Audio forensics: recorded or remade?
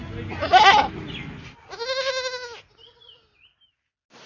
recorded